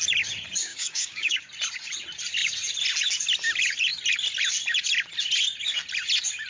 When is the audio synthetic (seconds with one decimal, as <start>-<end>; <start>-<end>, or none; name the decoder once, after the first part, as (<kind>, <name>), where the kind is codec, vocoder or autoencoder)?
0.7-1.5 (codec, DAC)